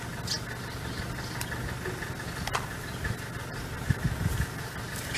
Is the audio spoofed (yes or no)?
no